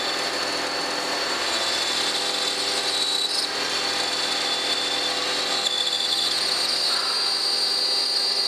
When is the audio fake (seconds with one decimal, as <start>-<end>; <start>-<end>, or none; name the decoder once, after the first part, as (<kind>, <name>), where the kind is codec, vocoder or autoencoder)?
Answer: none